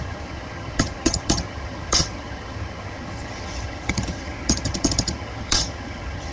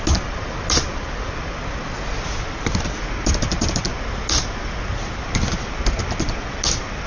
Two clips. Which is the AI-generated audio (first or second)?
first